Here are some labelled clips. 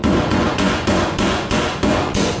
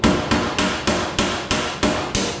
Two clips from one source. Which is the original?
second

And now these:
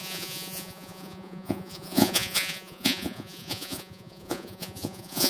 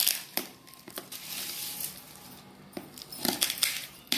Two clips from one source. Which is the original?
second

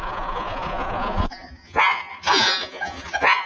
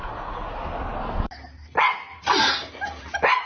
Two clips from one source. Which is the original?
second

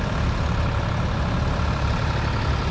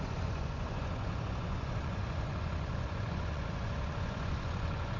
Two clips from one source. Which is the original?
first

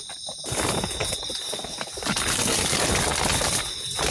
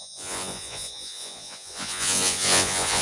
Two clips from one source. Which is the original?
first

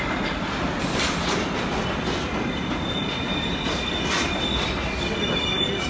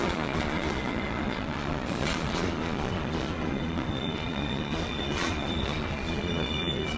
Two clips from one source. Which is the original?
first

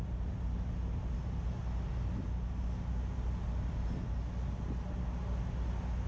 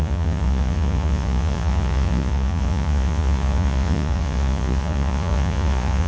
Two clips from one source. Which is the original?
first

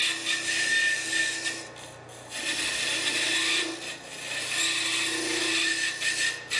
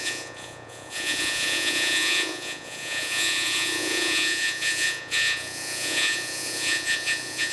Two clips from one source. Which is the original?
first